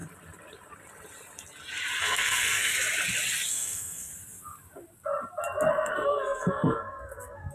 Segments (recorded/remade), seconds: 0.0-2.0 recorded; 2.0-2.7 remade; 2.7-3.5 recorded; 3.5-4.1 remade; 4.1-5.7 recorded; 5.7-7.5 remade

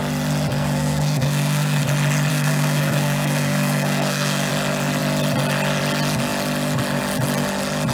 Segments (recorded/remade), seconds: 0.0-0.5 recorded; 0.5-1.8 remade; 1.8-2.3 recorded; 2.3-4.5 remade; 4.5-7.9 recorded

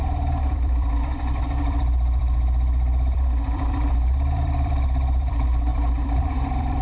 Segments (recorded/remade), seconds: 0.0-6.8 remade

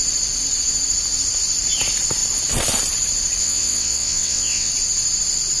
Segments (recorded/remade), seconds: 0.0-3.4 recorded; 3.4-4.7 remade; 4.7-5.6 recorded